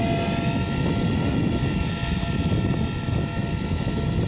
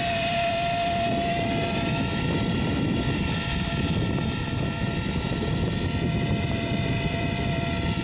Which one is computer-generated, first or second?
second